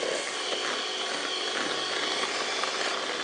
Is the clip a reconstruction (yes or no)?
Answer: no